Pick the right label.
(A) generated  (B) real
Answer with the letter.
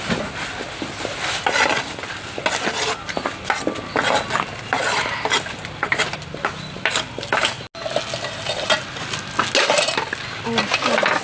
B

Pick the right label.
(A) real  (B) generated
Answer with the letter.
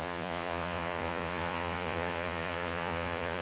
B